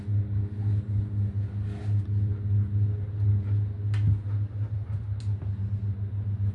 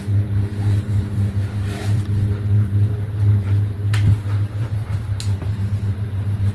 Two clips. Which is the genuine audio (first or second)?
first